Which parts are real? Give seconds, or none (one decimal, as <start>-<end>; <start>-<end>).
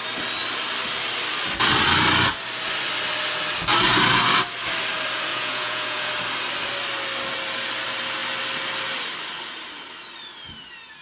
0.0-5.3; 6.1-11.0